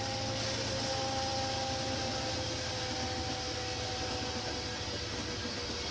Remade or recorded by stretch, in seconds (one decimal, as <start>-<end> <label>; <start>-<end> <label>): 0.0-5.9 recorded